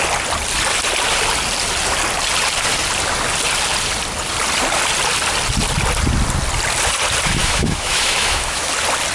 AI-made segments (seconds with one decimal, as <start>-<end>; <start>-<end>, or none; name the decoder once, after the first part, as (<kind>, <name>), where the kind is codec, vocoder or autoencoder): 7.4-8.7 (autoencoder, DAC-VAE)